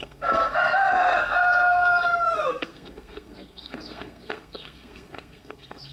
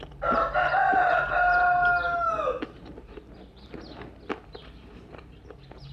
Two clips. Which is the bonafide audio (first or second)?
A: second